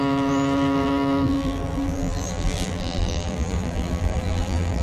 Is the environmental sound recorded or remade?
remade